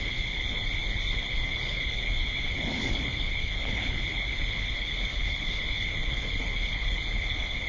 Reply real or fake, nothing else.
fake